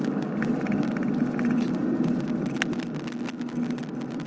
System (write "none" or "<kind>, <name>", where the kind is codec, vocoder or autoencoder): none